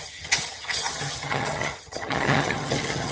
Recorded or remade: remade